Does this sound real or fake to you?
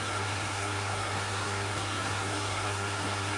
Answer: fake